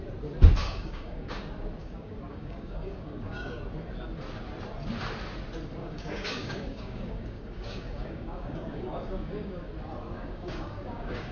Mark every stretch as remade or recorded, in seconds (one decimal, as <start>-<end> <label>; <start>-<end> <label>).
0.0-0.6 recorded; 0.6-1.4 remade; 1.4-1.8 recorded; 1.8-3.6 remade; 3.6-5.8 recorded; 5.8-9.7 remade; 9.7-10.1 recorded; 10.1-11.3 remade

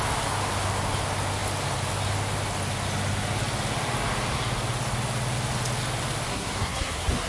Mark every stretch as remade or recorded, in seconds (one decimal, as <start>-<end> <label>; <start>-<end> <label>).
0.0-6.3 recorded; 6.3-7.3 remade